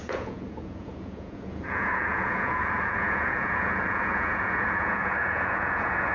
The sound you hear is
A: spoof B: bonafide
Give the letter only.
A